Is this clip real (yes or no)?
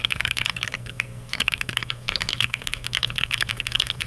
no